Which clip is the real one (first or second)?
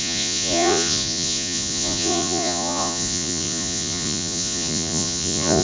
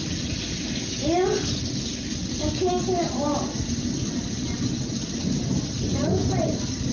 second